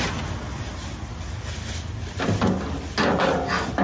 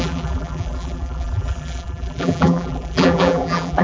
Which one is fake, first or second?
second